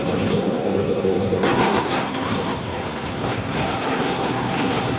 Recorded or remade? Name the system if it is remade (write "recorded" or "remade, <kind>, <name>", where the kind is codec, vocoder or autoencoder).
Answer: remade, codec, SNAC